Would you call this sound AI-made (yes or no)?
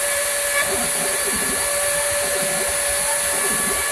no